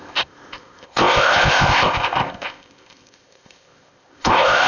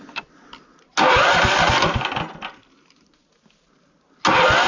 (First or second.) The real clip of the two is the second